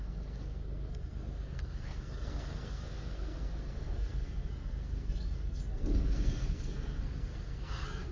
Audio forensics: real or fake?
fake